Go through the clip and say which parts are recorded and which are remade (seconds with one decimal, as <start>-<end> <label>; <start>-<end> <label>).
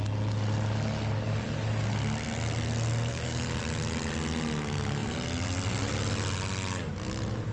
0.0-3.1 recorded; 3.1-3.6 remade; 3.6-7.5 recorded